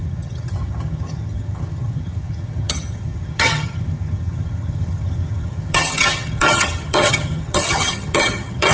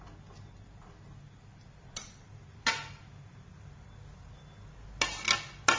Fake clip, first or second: first